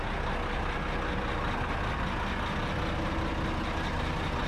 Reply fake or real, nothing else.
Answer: real